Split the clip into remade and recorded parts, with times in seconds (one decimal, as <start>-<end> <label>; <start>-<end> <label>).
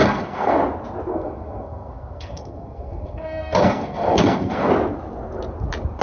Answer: 0.0-0.6 remade; 0.6-1.1 recorded; 1.1-4.7 remade; 4.7-6.0 recorded